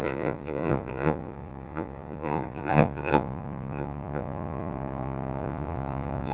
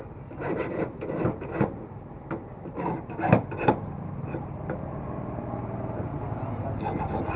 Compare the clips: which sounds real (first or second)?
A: second